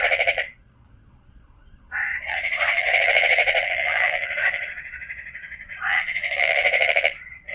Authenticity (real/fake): fake